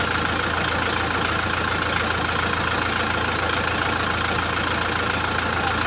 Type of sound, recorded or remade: recorded